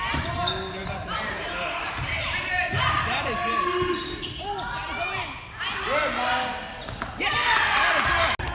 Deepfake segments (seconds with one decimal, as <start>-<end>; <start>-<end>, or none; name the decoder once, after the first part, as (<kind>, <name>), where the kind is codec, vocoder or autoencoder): 0.8-5.2 (vocoder, BigVGAN v2); 6.7-7.2